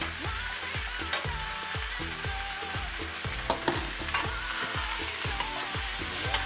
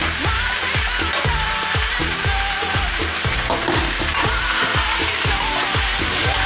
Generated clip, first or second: second